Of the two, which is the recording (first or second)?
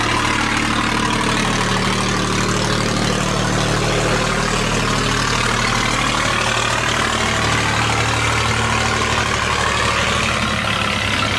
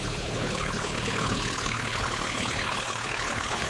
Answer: first